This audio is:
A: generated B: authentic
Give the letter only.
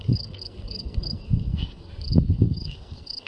A